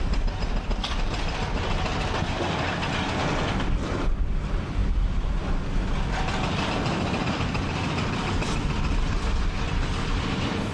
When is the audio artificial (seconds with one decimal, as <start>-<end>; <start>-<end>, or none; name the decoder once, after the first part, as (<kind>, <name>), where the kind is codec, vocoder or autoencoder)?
0.0-1.9 (vocoder, BigVGAN v2); 3.9-4.8; 6.6-10.7